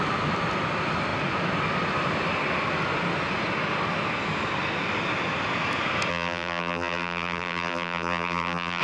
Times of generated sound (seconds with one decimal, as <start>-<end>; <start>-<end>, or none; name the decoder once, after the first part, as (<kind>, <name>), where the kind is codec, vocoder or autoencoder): 6.1-8.8 (vocoder, BigVGAN v2)